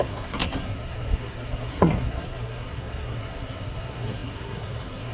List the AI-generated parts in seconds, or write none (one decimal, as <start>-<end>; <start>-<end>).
0.0-5.1